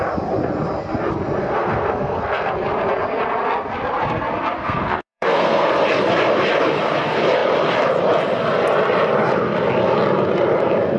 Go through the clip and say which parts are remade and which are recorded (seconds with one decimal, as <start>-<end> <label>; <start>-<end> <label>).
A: 0.0-1.4 recorded; 1.4-2.5 remade; 2.5-4.6 recorded; 4.6-5.7 remade; 5.7-11.0 recorded